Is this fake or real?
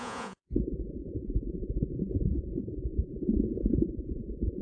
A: fake